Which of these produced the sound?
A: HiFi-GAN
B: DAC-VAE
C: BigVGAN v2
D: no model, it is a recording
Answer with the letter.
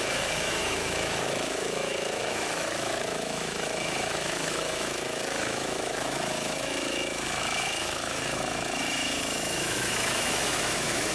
B